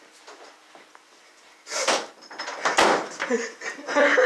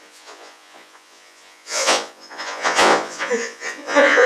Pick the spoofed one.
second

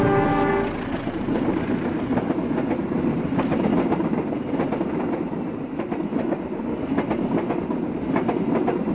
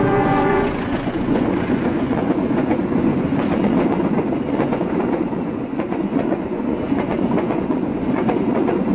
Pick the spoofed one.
second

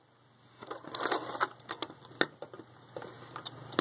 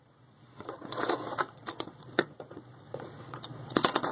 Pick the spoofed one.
second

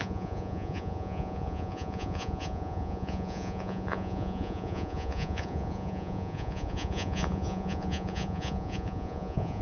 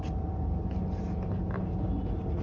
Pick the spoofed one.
first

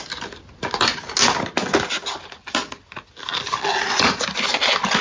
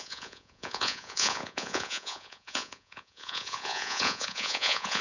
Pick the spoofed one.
second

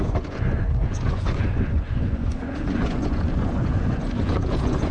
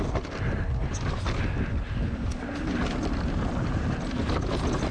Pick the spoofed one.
first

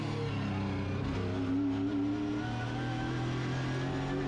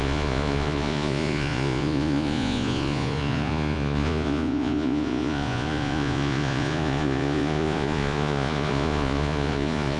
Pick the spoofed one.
second